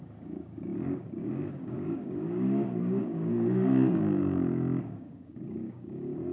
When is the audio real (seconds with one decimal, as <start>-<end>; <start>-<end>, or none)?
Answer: none